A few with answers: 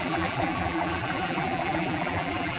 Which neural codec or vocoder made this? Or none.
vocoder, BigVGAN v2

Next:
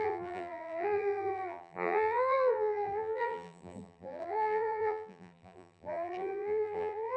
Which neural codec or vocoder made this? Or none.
vocoder, BigVGAN v2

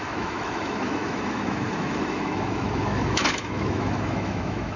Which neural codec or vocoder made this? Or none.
autoencoder, DAC-VAE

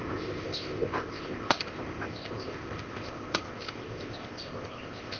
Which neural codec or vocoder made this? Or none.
codec, ZipCodec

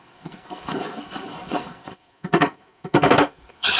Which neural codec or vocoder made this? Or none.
codec, SNAC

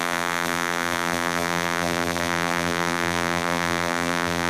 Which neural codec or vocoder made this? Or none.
vocoder, BigVGAN v2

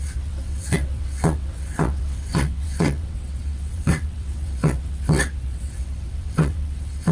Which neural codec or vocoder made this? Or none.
vocoder, WaveNeXt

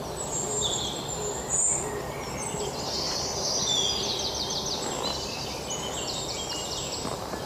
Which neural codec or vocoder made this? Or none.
none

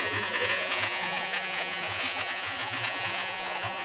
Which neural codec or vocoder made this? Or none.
vocoder, Vocos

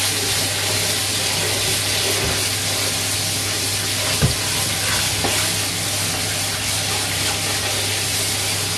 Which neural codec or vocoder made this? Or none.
none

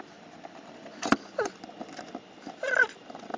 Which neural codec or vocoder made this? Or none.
none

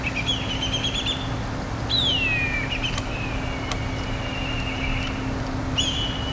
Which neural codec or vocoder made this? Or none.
none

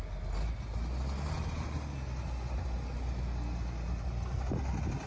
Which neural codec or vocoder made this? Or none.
none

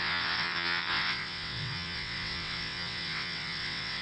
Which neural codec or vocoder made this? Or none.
vocoder, WaveNeXt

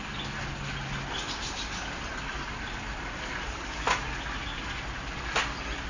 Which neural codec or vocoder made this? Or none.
none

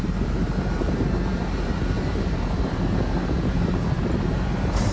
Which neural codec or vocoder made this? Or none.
vocoder, BigVGAN v2